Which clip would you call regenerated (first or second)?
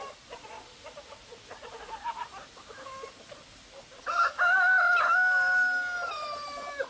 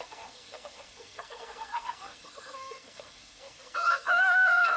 second